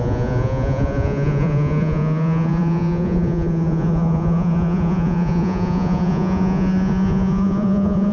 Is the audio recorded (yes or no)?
no